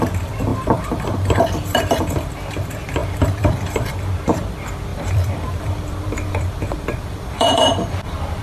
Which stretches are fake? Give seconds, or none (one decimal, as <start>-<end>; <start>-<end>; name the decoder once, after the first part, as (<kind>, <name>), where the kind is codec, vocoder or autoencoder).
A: 0.5-2.3 (vocoder, BigVGAN v2); 3.0-4.1; 4.9-8.4